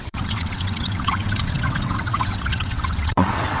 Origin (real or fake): fake